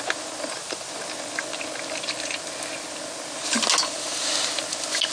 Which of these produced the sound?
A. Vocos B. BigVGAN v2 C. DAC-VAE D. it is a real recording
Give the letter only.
D